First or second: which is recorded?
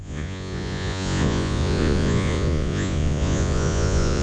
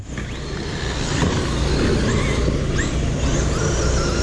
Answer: second